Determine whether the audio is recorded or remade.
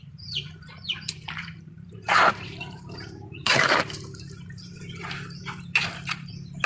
remade